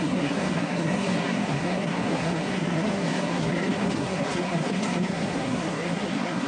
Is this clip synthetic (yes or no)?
yes